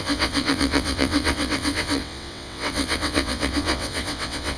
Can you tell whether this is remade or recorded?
remade